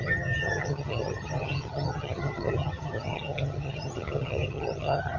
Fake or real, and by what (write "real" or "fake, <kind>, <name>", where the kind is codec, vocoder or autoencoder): fake, vocoder, HiFi-GAN